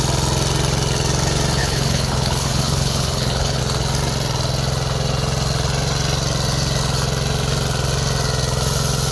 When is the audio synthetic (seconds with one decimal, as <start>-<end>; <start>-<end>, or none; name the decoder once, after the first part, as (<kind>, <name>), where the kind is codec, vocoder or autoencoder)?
1.6-3.6 (codec, HILCodec)